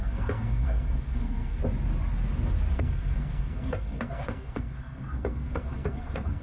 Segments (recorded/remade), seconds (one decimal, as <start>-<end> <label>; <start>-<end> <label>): 0.0-1.6 remade; 1.6-2.7 recorded; 2.7-6.4 remade